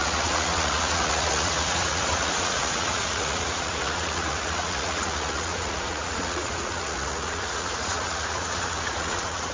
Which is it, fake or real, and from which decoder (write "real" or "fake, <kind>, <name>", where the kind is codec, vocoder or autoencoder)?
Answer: fake, vocoder, Vocos